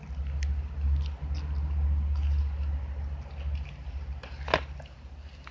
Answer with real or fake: real